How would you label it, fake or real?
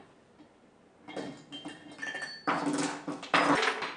real